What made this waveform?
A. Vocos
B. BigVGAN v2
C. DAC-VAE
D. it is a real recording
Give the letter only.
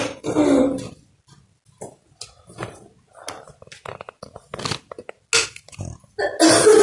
D